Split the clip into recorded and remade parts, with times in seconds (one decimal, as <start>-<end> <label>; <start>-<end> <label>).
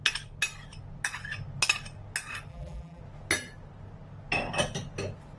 0.0-2.5 recorded; 2.5-3.0 remade; 3.0-5.4 recorded